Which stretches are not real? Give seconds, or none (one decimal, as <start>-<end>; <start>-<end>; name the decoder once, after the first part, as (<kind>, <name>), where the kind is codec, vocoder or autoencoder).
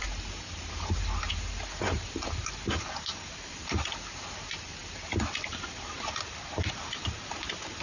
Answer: none